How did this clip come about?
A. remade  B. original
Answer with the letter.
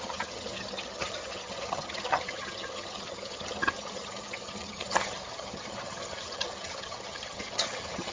A